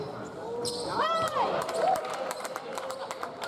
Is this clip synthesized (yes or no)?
yes